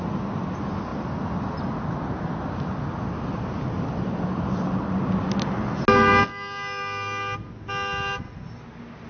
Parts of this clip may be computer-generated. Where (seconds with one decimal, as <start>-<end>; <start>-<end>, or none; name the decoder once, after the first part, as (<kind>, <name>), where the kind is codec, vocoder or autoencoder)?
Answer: none